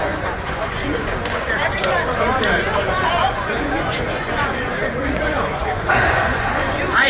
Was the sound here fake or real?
fake